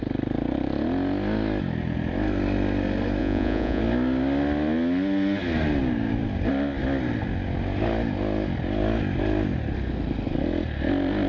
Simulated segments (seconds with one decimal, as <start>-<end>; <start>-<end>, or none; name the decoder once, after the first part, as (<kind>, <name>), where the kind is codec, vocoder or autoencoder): 3.2-3.8 (vocoder, Vocos)